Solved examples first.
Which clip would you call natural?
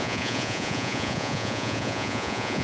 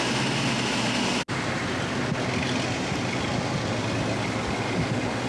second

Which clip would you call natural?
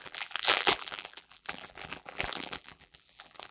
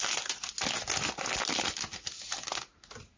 second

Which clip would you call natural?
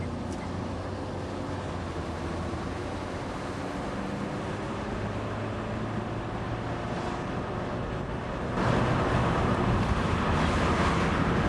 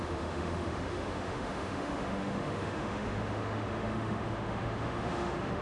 first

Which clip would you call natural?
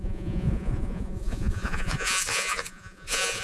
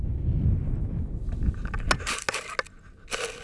second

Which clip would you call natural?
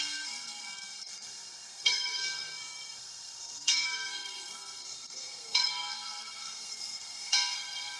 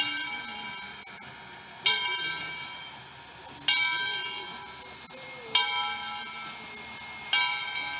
second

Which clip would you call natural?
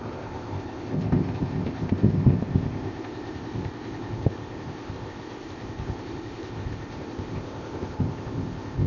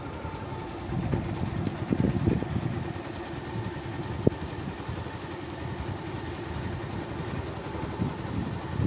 second